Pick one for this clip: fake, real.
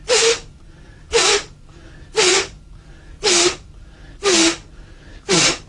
fake